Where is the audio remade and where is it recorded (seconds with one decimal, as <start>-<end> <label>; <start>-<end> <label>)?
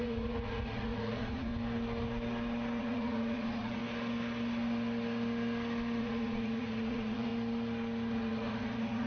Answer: 0.0-1.5 remade; 1.5-2.8 recorded; 2.8-3.8 remade; 3.8-6.0 recorded; 6.0-7.3 remade; 7.3-8.1 recorded; 8.1-9.1 remade